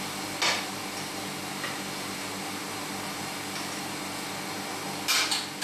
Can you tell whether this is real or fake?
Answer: real